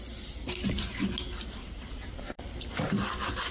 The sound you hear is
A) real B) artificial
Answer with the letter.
A